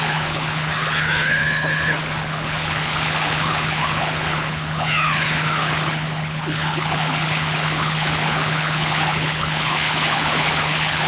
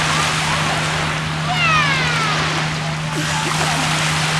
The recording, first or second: second